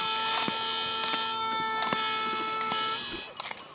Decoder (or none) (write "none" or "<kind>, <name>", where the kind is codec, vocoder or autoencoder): none